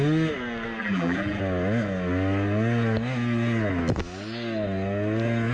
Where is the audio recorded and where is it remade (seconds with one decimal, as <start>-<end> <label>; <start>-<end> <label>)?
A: 0.0-0.8 recorded; 0.8-1.4 remade; 1.4-5.5 recorded